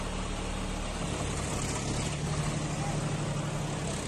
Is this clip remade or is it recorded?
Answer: recorded